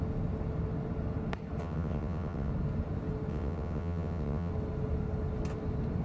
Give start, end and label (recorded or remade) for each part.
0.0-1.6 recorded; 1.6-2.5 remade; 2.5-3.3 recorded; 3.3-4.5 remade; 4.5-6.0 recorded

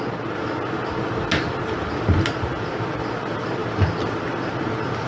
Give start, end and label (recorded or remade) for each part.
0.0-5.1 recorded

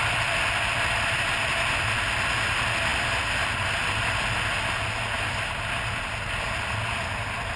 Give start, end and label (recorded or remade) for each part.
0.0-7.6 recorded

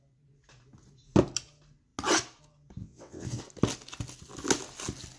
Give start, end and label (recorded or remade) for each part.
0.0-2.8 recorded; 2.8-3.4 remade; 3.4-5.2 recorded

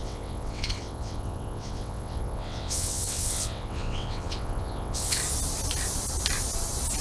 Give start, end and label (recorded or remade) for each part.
0.0-5.2 remade; 5.2-7.0 recorded

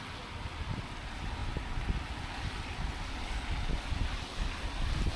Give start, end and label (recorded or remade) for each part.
0.0-5.2 recorded

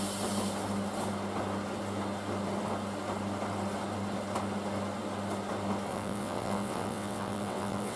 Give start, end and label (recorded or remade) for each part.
0.0-5.9 recorded; 5.9-8.0 remade